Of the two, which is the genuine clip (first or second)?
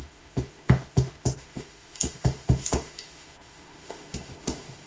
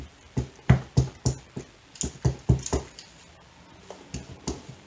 second